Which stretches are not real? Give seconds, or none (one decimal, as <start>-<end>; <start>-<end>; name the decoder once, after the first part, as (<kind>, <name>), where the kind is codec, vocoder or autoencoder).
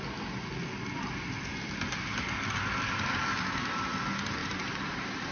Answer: 4.4-5.3 (vocoder, BigVGAN v2)